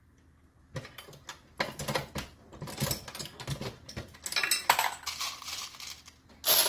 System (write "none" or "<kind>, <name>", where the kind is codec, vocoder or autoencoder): none